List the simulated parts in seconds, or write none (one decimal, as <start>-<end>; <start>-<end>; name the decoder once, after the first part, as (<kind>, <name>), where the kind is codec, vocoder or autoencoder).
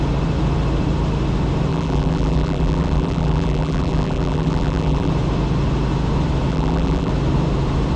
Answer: 1.7-5.1 (vocoder, BigVGAN v2); 6.5-7.1